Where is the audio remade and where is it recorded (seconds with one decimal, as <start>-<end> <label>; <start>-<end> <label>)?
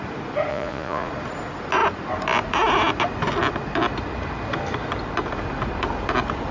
0.0-0.5 recorded; 0.5-1.1 remade; 1.1-6.5 recorded